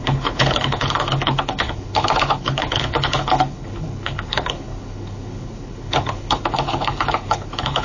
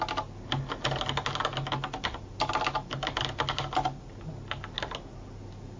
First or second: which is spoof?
first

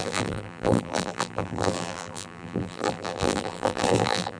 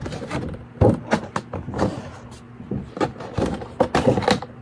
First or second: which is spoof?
first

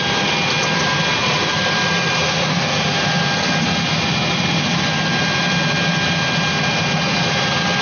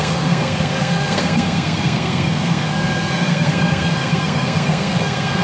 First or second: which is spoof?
second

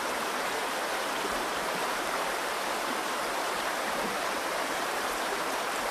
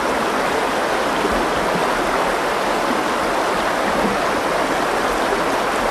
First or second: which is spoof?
first